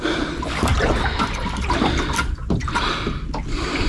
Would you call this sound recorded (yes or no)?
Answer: yes